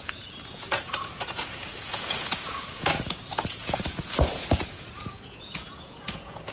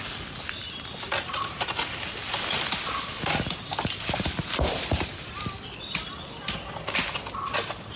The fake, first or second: first